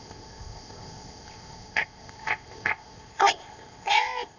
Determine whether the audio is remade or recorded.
remade